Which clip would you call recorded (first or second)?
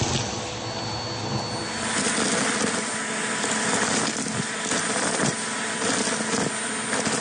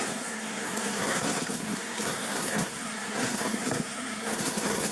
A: first